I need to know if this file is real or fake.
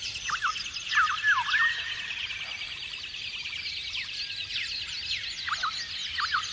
real